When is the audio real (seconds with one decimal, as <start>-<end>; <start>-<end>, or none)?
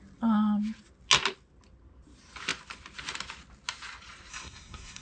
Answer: 0.0-4.3